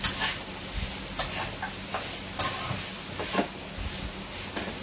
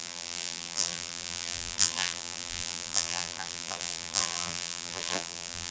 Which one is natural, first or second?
first